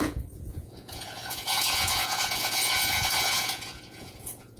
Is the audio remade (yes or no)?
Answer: yes